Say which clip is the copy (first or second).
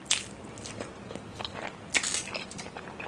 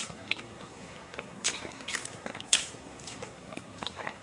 second